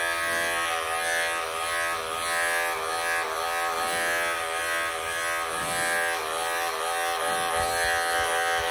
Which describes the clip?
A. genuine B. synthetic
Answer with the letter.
A